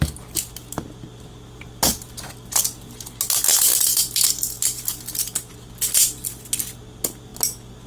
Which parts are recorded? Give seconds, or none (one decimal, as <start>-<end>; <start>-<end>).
0.0-7.9